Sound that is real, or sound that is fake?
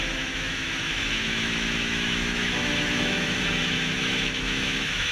fake